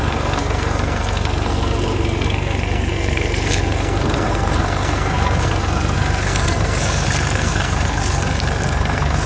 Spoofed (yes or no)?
yes